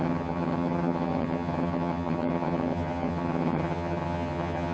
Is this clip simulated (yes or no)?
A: yes